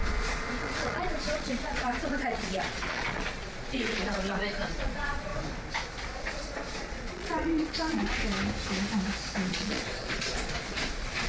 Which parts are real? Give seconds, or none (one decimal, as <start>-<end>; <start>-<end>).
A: 5.3-6.2; 8.0-9.5